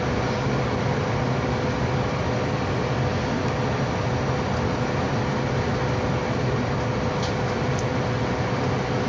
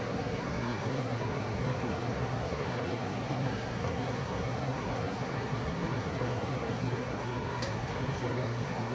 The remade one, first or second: second